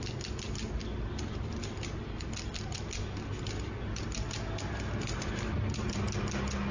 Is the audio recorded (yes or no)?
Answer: yes